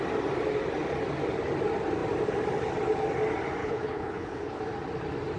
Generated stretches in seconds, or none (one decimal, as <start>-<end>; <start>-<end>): 3.6-4.6